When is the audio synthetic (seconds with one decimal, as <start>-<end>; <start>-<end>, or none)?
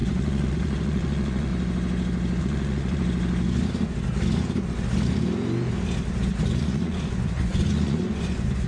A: 0.0-1.5; 2.4-3.0; 6.6-8.7